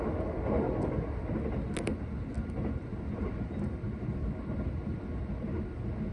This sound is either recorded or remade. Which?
recorded